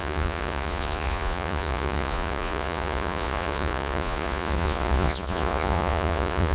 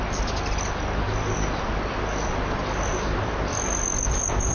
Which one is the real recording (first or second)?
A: second